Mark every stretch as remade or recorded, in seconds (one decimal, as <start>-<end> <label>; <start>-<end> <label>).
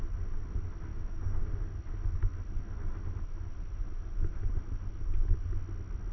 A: 0.0-0.9 recorded; 0.9-1.5 remade; 1.5-6.1 recorded